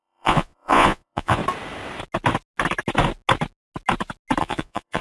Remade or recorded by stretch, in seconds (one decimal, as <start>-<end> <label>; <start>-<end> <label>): 0.0-1.4 remade; 1.4-4.4 recorded; 4.4-5.0 remade